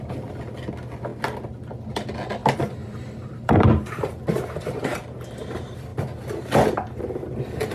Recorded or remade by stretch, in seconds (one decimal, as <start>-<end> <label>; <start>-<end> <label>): 0.0-2.4 recorded; 2.4-4.2 remade; 4.2-7.7 recorded